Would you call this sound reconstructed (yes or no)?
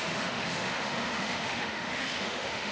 yes